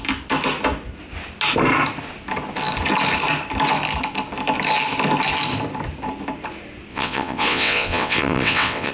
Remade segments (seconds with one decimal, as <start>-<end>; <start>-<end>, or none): 6.9-8.9

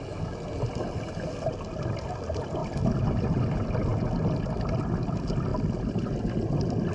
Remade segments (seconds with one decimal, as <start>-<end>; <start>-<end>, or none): none

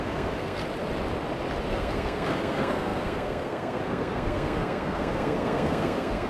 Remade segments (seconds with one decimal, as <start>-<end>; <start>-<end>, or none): 0.0-0.6; 1.7-6.3

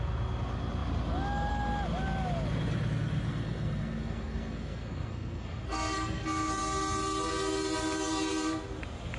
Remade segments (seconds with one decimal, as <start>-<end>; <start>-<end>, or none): 3.3-6.6

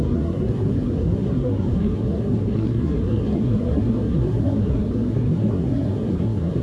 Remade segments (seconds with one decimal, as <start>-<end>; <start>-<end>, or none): 0.0-6.6

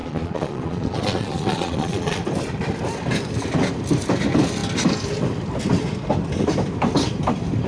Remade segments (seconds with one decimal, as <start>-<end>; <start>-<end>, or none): 0.0-2.2

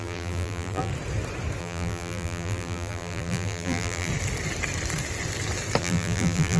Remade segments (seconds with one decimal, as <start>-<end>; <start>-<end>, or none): 0.0-0.9; 1.6-4.1; 5.8-6.6

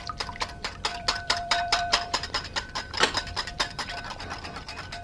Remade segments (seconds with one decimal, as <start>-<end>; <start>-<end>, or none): 0.9-3.8